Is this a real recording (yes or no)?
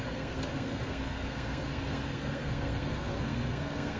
no